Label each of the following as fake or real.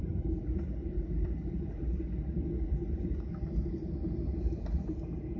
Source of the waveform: real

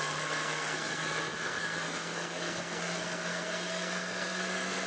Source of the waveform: fake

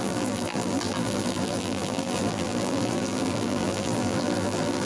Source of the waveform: fake